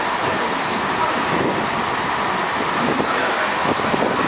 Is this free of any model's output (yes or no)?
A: yes